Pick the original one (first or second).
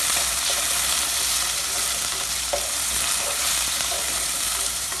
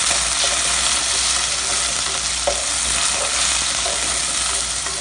second